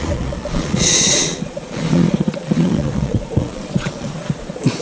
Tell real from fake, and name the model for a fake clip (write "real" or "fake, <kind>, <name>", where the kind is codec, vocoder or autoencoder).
fake, vocoder, Vocos